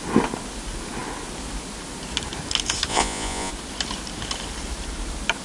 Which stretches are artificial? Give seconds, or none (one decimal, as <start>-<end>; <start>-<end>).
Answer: 2.9-3.5